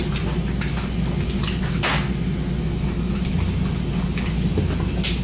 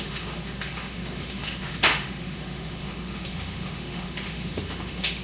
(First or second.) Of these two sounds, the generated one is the second